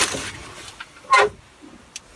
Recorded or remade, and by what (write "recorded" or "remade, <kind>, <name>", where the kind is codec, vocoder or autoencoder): recorded